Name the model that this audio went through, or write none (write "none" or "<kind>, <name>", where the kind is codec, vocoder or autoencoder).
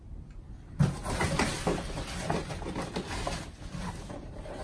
none